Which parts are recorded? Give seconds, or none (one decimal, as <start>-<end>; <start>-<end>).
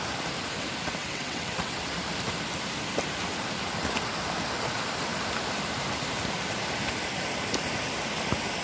0.0-1.0; 1.8-8.6